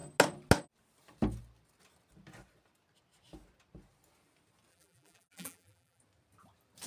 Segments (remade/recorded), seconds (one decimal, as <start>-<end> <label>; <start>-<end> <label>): 0.0-4.7 recorded; 4.7-6.0 remade; 6.0-6.9 recorded